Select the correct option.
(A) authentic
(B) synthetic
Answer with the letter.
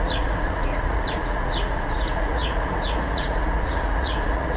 B